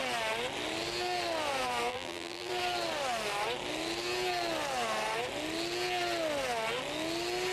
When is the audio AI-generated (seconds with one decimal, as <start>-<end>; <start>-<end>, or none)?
1.9-2.5